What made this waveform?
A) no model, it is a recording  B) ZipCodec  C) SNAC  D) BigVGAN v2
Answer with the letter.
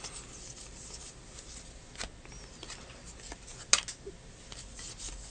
A